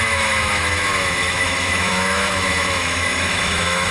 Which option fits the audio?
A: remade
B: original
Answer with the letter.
A